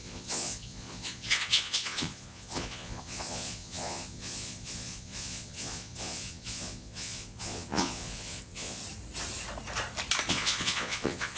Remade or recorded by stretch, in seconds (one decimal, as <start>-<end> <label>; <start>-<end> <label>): 0.0-8.8 remade; 8.8-10.3 recorded; 10.3-11.4 remade